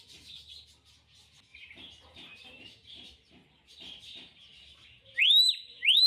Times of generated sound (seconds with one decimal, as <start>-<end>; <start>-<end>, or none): 1.5-5.2